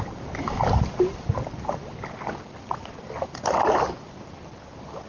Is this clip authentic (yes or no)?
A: yes